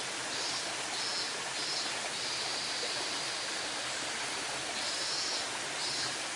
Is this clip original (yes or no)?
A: yes